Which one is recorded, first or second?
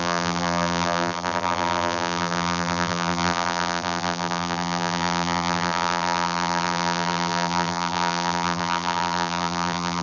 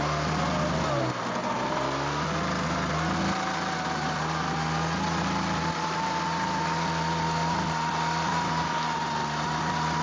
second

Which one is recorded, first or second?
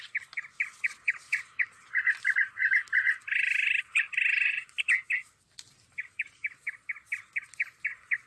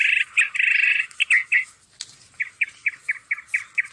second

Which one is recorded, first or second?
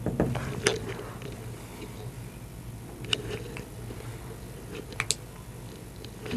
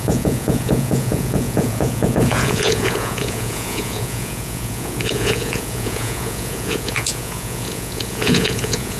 first